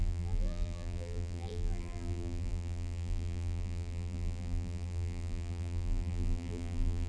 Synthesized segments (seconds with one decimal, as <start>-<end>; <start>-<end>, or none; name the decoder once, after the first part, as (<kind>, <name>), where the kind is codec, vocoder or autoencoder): 0.0-7.1 (vocoder, BigVGAN v2)